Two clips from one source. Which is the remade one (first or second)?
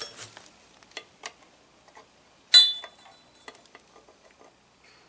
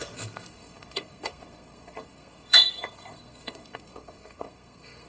second